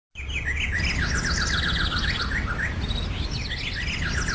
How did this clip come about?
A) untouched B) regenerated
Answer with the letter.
A